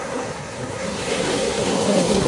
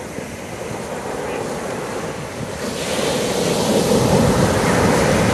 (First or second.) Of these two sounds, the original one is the second